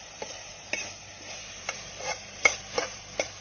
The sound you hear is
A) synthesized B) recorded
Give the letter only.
A